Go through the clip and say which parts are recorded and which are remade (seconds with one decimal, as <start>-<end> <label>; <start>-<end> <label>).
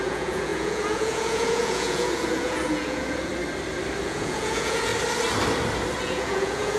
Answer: 0.0-3.3 remade; 3.3-4.0 recorded; 4.0-4.9 remade; 4.9-6.0 recorded; 6.0-6.8 remade